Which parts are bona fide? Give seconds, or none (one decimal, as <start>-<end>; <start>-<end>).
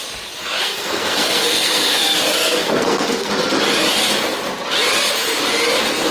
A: 0.0-0.4; 2.0-2.4; 3.3-6.1